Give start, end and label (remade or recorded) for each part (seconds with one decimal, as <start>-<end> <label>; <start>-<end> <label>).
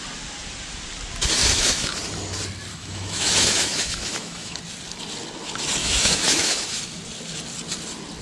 0.0-1.4 recorded; 1.4-2.0 remade; 2.0-2.7 recorded; 2.7-4.6 remade; 4.6-5.8 recorded; 5.8-6.8 remade; 6.8-8.2 recorded